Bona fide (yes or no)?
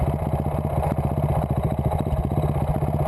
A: yes